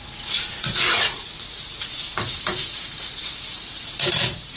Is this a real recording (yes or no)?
no